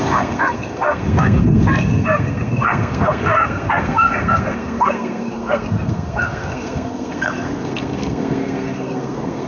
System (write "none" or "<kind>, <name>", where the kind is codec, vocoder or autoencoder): codec, SNAC